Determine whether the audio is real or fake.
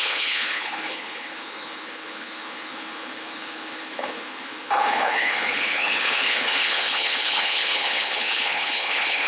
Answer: fake